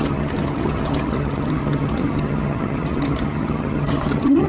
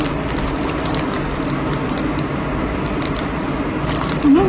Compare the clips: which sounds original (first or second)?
second